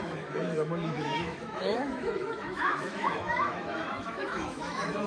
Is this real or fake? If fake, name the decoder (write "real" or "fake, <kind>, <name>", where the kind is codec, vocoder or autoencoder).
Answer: fake, autoencoder, DAC-VAE